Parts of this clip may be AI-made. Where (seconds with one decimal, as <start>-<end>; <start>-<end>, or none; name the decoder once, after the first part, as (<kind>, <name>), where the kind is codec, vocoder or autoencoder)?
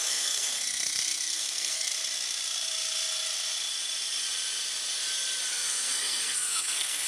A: 0.0-1.9 (codec, SNAC); 5.5-7.1